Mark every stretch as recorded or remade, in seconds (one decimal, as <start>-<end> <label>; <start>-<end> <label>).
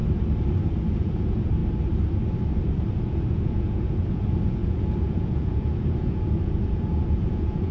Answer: 0.0-1.0 recorded; 1.0-1.6 remade; 1.6-3.1 recorded; 3.1-7.7 remade